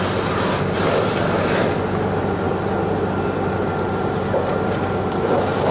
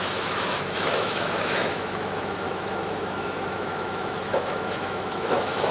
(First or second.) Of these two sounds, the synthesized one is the second